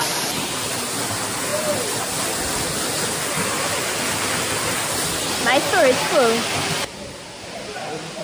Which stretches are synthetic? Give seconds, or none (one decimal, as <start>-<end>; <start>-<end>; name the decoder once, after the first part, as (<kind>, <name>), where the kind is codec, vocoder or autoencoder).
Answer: none